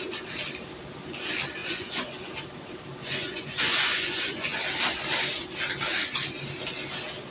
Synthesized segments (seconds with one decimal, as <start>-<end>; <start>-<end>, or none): 1.6-2.3; 3.0-4.6